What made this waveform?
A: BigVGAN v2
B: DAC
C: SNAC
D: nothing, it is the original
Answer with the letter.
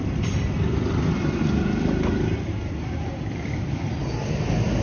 A